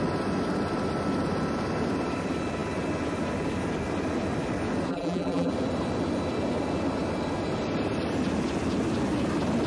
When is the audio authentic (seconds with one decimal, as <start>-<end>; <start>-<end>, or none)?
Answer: 0.0-4.9; 5.5-9.7